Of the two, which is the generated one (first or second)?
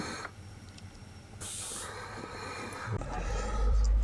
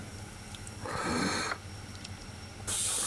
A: first